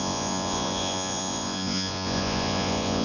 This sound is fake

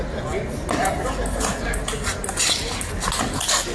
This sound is real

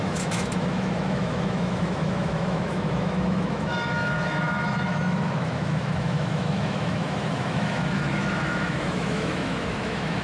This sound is fake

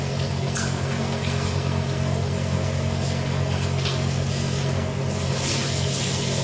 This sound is fake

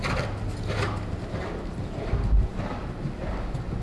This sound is real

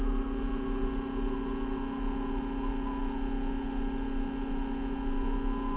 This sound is real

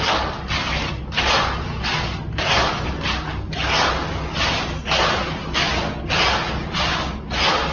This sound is real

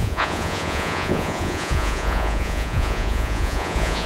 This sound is fake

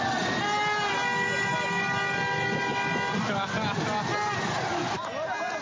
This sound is real